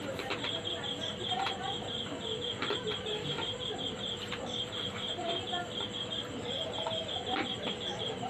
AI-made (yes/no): yes